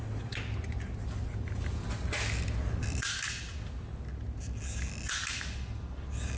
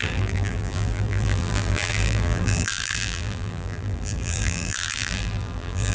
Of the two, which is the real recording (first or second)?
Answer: first